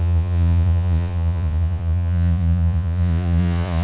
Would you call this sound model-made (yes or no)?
yes